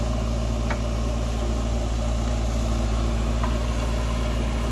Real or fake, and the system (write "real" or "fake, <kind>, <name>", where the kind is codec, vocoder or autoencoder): real